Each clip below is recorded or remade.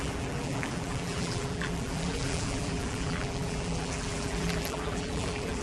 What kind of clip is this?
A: remade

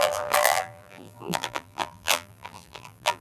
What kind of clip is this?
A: remade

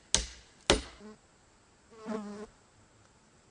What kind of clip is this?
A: recorded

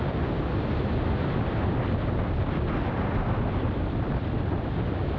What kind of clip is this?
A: recorded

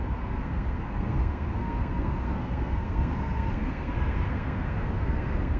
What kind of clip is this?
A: remade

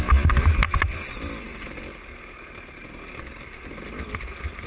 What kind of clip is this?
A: recorded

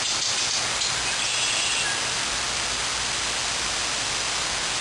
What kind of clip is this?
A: recorded